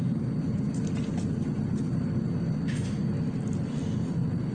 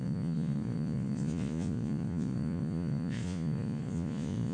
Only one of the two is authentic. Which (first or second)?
first